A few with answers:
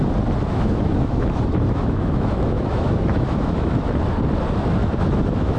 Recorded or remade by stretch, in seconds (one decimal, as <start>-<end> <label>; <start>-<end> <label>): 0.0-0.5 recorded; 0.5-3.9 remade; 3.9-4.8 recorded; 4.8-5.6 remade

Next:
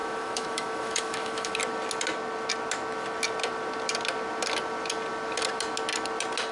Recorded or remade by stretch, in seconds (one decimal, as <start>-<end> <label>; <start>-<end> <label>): 0.0-1.5 remade; 1.5-6.5 recorded

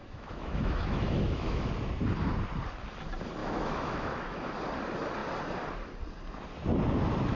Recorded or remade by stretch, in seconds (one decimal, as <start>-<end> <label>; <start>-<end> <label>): 0.0-1.7 remade; 1.7-3.4 recorded; 3.4-4.5 remade; 4.5-7.3 recorded